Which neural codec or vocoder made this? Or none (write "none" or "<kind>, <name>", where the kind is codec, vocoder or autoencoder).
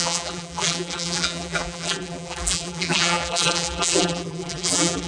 vocoder, BigVGAN v2